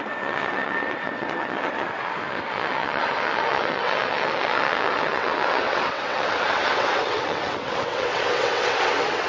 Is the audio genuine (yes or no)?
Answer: no